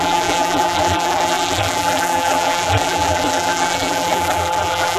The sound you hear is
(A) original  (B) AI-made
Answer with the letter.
B